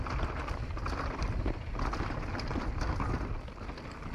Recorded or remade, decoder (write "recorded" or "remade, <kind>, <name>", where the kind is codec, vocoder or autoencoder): recorded